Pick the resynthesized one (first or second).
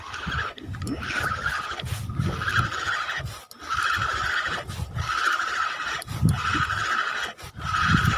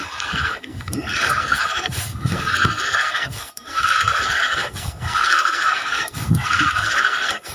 second